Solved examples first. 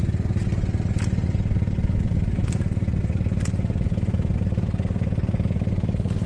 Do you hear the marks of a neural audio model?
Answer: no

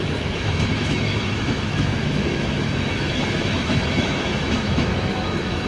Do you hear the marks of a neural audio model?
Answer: yes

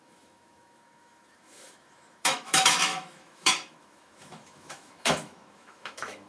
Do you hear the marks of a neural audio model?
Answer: yes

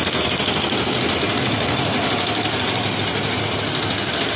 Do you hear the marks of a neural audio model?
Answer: no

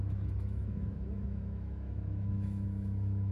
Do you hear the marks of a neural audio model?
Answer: yes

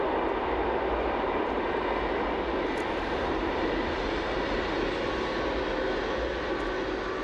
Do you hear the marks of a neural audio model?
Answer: no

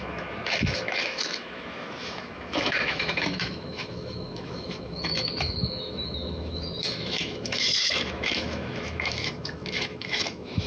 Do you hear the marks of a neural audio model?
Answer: yes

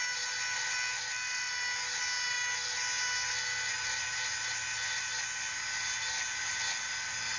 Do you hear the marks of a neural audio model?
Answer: no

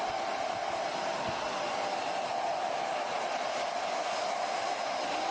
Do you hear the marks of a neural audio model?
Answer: no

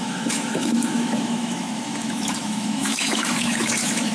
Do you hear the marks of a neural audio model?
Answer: yes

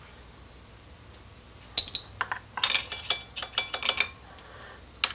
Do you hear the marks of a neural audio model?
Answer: no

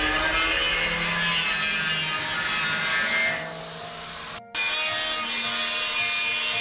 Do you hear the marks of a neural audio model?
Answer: no